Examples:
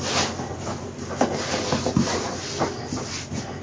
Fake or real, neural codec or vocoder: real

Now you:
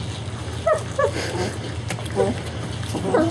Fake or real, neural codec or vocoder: real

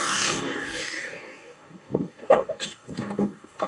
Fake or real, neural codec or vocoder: fake, codec, DAC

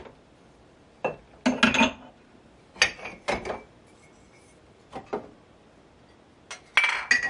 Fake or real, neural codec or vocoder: real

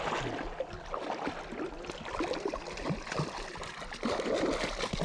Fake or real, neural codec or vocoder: real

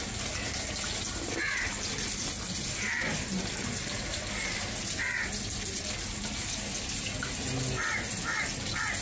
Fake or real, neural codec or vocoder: real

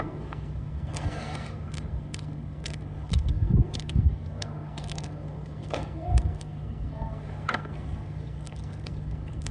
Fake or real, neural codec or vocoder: fake, codec, SNAC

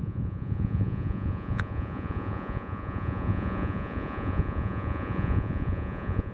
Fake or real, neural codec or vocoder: fake, vocoder, Vocos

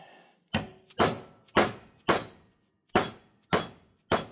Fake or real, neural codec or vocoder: real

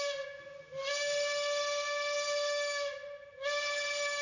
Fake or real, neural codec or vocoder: real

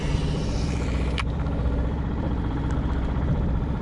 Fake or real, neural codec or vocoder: fake, vocoder, BigVGAN v2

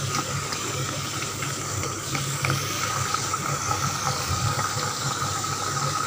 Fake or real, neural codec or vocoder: fake, codec, DAC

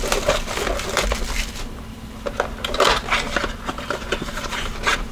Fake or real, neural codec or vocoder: real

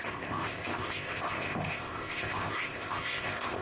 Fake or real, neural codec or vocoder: fake, codec, ZipCodec